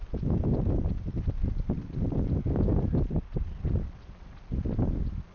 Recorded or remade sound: recorded